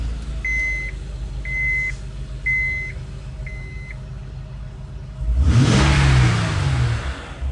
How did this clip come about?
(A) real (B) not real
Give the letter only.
A